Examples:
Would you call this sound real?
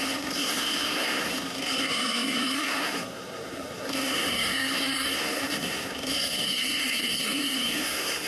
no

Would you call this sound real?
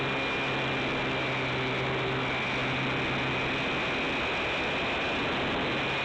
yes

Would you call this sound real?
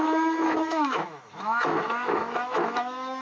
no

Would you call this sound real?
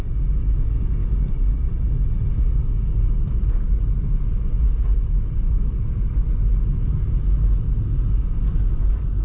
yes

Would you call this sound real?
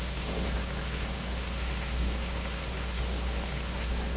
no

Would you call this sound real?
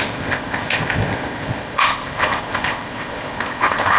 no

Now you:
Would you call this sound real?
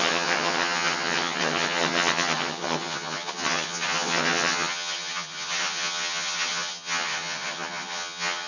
no